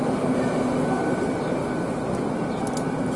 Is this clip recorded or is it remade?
recorded